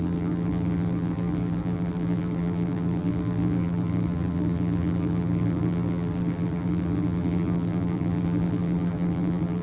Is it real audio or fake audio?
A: fake